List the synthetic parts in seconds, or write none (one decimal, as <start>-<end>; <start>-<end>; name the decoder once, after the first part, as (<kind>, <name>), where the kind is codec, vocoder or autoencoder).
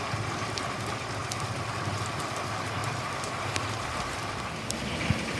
1.2-2.2 (vocoder, BigVGAN v2); 2.8-4.4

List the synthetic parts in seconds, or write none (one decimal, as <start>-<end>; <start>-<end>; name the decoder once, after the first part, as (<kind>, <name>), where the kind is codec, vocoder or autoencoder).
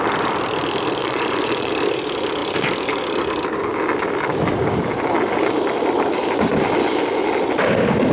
1.0-1.7 (vocoder, Vocos)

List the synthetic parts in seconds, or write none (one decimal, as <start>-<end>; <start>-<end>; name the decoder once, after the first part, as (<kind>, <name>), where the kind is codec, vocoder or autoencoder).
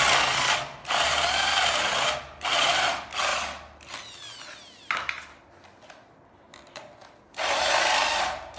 none